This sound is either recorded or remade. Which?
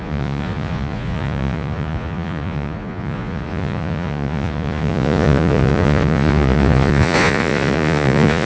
remade